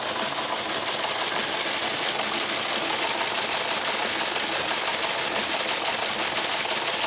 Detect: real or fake real